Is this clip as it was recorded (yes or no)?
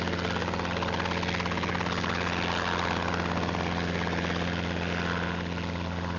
yes